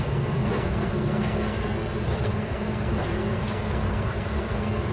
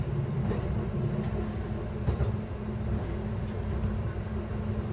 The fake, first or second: first